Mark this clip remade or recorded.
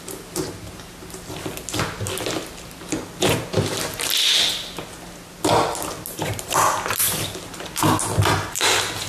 recorded